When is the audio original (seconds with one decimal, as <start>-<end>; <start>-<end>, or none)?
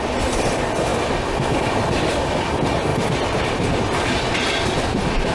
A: 0.0-2.9; 3.5-5.3